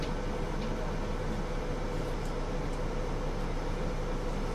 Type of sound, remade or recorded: recorded